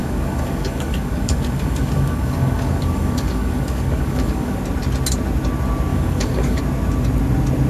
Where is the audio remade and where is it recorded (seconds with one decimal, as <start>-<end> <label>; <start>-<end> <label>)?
0.0-4.6 remade; 4.6-5.9 recorded; 5.9-6.6 remade; 6.6-7.7 recorded